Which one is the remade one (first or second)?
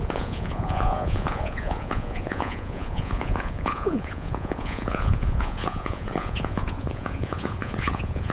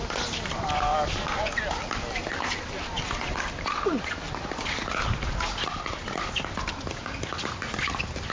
first